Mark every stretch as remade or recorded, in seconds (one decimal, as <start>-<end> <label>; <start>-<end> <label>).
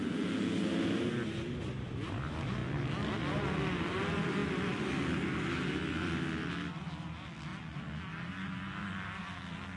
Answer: 0.0-9.8 recorded